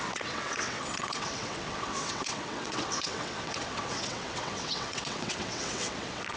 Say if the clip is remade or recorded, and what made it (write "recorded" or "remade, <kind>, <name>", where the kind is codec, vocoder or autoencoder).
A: remade, vocoder, WaveNeXt